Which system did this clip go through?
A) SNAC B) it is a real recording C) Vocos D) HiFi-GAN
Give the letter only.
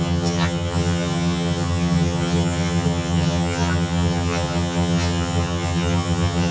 D